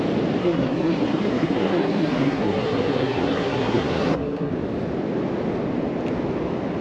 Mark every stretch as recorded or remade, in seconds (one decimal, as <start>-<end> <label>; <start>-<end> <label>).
0.0-0.4 recorded; 0.4-4.5 remade; 4.5-6.8 recorded